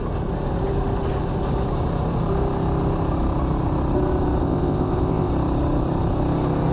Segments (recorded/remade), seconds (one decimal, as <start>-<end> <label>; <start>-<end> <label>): 0.0-4.4 recorded; 4.4-5.3 remade; 5.3-6.7 recorded